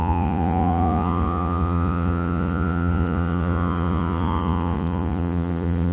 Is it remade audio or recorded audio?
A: remade